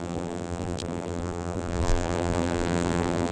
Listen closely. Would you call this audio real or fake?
fake